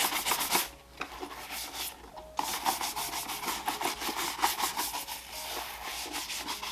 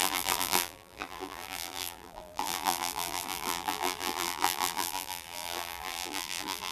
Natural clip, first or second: first